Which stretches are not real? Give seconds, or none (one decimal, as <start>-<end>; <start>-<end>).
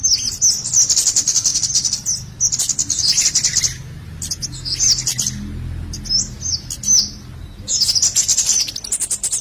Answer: none